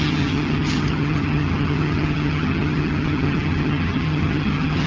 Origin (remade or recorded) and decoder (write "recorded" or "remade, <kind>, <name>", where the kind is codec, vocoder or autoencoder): remade, vocoder, HiFi-GAN